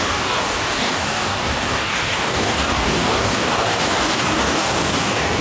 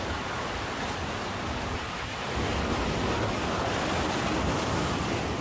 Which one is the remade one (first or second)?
first